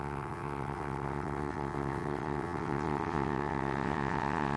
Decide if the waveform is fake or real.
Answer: fake